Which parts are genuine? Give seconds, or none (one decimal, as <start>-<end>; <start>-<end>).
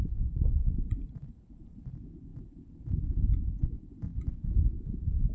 0.0-5.3